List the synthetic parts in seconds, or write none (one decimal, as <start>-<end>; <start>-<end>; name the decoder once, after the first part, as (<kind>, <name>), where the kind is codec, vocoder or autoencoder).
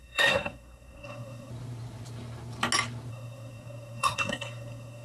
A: 0.0-1.5 (codec, SNAC); 3.1-5.0